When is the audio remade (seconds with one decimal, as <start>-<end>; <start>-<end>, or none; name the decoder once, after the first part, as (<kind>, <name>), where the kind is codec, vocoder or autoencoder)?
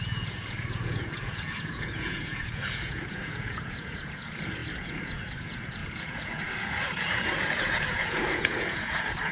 0.0-9.3 (vocoder, Vocos)